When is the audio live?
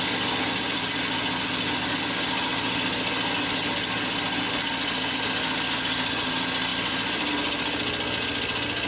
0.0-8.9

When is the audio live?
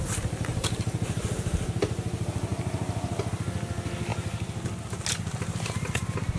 0.0-0.5; 1.3-6.4